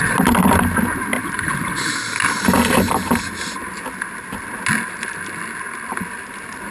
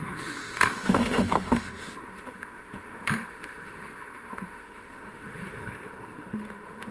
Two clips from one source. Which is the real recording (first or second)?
first